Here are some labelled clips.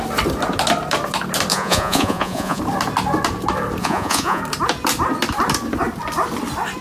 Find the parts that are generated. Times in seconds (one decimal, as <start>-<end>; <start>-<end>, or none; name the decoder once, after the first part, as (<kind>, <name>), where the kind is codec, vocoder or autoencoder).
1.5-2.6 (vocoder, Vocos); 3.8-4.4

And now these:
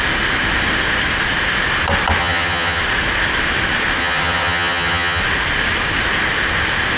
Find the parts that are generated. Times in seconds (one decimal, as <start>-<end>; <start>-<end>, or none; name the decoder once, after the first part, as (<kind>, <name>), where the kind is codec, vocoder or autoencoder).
2.2-2.8 (vocoder, HiFi-GAN); 4.0-5.2

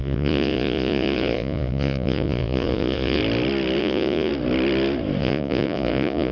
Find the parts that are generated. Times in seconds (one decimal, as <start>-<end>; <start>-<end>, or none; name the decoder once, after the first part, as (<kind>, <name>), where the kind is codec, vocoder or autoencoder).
0.0-3.2 (vocoder, Vocos); 3.8-4.3; 5.2-6.3

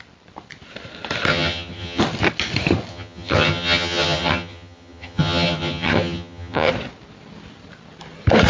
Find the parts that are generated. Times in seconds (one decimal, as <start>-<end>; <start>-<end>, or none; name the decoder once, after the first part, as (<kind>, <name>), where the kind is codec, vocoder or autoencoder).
1.3-2.0 (vocoder, HiFi-GAN); 2.9-6.7